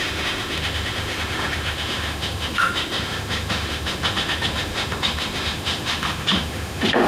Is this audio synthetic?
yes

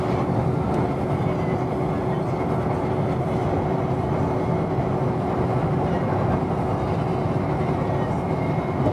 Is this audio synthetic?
no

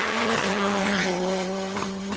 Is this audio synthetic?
yes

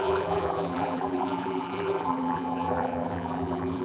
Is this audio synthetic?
yes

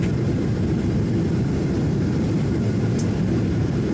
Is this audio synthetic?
yes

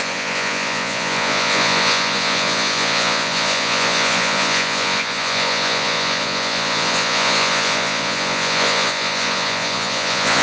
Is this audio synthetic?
yes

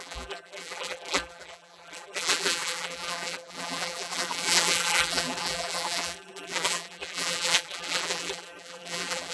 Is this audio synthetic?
yes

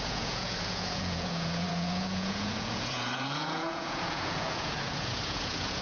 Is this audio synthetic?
yes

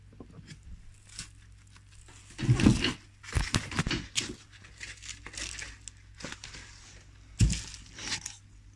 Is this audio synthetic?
no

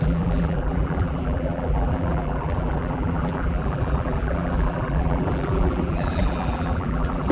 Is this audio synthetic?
yes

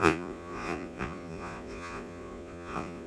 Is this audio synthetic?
yes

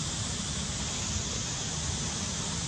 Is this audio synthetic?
no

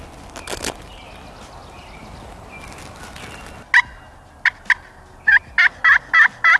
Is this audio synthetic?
no